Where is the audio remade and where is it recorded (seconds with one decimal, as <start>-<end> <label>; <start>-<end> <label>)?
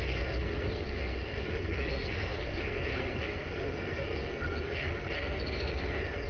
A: 0.0-6.3 remade